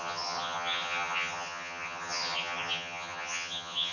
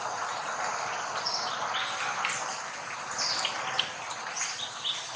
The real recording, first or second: second